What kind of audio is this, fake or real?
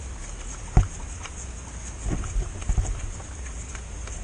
real